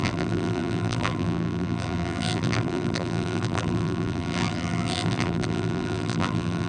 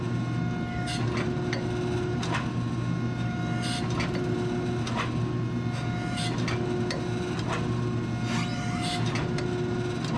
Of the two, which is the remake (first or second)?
first